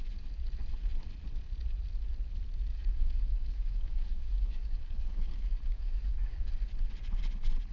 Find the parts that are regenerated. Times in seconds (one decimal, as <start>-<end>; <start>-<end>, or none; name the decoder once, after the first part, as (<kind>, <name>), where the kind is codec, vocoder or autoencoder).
2.7-6.5 (codec, DAC)